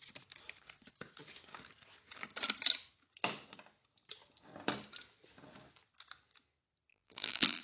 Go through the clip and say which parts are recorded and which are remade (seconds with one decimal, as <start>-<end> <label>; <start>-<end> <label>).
0.0-6.9 recorded; 6.9-7.6 remade